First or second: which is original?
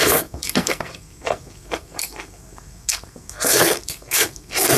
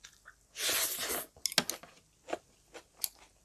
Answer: second